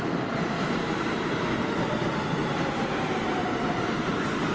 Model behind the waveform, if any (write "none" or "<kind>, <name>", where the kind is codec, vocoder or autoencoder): none